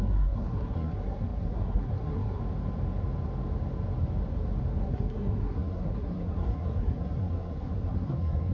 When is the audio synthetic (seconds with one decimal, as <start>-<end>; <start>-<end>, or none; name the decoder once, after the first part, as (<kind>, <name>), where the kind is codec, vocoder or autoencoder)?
0.0-2.4 (codec, SNAC); 4.8-8.5